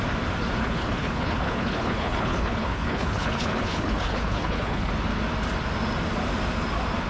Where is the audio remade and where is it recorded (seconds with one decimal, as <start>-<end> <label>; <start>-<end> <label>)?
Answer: 0.0-0.6 recorded; 0.6-4.9 remade; 4.9-7.1 recorded